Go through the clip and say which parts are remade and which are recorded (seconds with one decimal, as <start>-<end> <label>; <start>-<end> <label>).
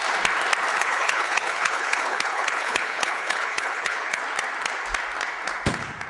0.0-0.7 recorded; 0.7-4.2 remade; 4.2-6.1 recorded